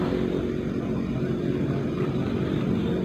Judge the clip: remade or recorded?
recorded